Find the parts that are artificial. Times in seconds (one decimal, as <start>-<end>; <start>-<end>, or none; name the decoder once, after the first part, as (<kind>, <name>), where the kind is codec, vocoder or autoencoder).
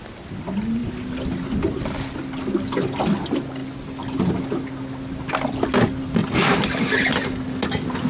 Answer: none